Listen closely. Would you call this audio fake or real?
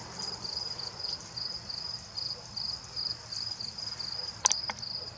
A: real